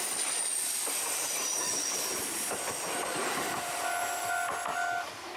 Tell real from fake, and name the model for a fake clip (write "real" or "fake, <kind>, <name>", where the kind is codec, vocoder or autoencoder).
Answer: real